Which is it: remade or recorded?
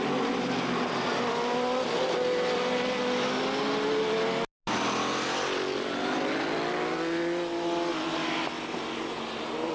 recorded